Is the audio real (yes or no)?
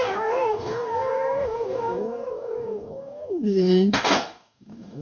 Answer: no